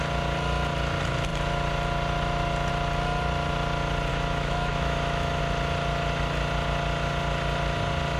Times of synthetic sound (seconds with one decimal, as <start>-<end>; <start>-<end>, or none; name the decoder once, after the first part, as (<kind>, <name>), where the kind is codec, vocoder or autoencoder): 4.1-5.4 (autoencoder, DAC-VAE)